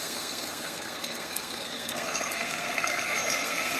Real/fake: fake